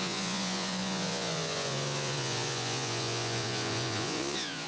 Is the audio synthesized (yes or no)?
yes